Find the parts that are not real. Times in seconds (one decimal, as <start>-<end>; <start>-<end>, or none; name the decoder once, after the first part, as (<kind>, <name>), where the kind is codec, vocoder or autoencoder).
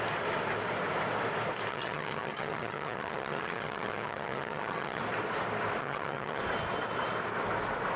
1.7-5.0 (vocoder, HiFi-GAN); 5.8-6.4